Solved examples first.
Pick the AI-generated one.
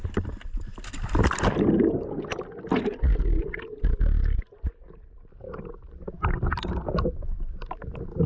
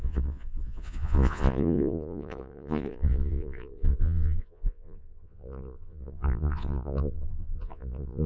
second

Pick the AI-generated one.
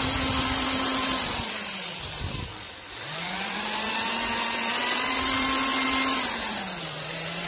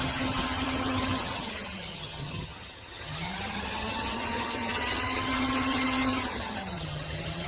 second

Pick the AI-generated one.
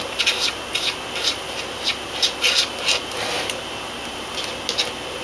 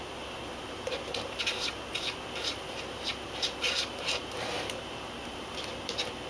second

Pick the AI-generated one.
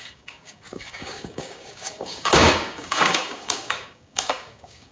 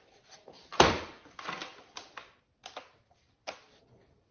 first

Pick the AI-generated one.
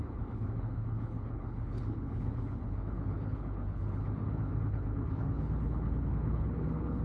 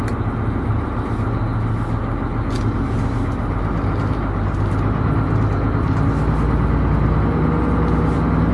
first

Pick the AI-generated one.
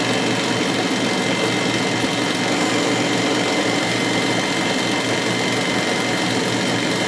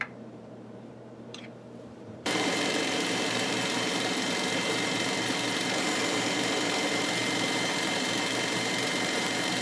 second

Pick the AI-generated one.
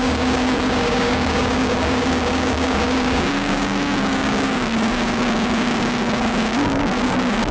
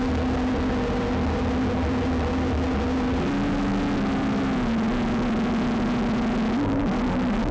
first